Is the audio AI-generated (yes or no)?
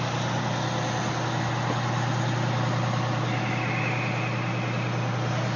no